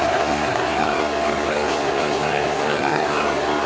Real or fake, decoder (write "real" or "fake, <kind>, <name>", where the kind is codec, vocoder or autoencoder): fake, codec, SNAC